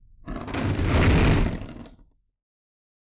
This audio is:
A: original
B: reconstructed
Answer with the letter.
A